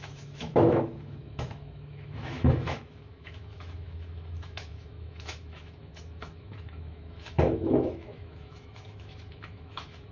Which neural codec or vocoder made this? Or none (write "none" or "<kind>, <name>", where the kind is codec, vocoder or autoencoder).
autoencoder, DAC-VAE